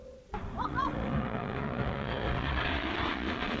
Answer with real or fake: fake